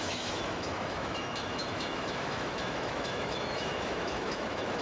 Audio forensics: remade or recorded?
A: remade